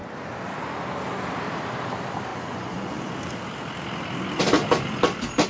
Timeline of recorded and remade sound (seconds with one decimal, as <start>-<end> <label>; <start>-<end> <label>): 0.0-2.3 recorded; 2.3-3.1 remade; 3.1-5.5 recorded